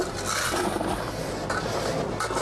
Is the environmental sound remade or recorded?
recorded